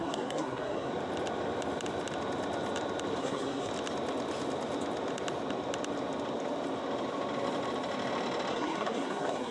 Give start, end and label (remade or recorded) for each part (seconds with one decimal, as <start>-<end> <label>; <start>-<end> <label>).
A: 0.0-0.9 remade; 0.9-3.2 recorded; 3.2-3.7 remade; 3.7-8.5 recorded; 8.5-9.5 remade